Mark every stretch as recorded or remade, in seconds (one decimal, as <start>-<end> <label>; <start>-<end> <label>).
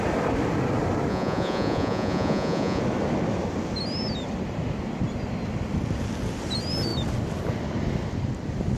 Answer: 0.0-1.1 recorded; 1.1-2.8 remade; 2.8-8.8 recorded